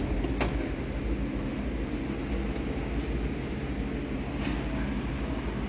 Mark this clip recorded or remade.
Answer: recorded